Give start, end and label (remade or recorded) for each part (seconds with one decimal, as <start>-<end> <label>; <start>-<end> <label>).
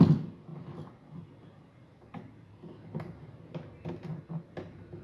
0.0-5.0 recorded